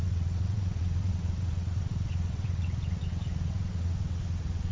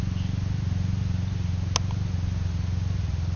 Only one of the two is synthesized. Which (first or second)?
first